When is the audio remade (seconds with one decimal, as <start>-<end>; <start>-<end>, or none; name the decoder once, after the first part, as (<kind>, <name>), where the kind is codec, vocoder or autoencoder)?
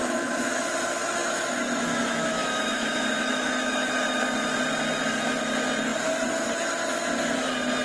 0.0-0.7 (autoencoder, DAC-VAE); 1.2-4.2